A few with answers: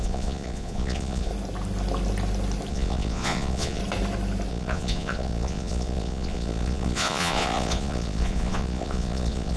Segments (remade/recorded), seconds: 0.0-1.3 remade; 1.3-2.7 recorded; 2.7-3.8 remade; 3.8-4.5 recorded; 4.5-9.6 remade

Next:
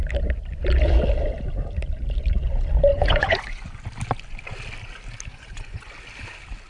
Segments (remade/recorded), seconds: 0.0-2.9 recorded; 2.9-3.8 remade; 3.8-5.3 recorded; 5.3-5.9 remade; 5.9-6.7 recorded

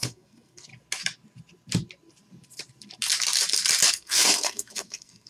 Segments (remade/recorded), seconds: 0.0-0.7 remade; 0.7-3.9 recorded; 3.9-5.3 remade

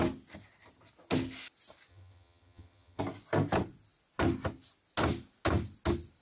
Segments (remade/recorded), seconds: 0.0-1.9 recorded; 1.9-3.0 remade; 3.0-6.2 recorded

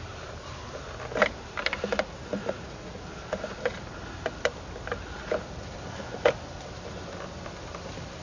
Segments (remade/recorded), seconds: 0.0-2.4 recorded; 2.4-3.0 remade; 3.0-8.2 recorded

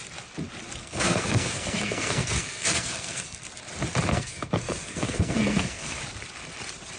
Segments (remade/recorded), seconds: 0.0-0.8 recorded; 0.8-3.4 remade; 3.4-4.1 recorded; 4.1-6.0 remade; 6.0-7.0 recorded